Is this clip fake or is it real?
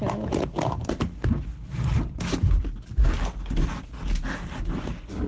real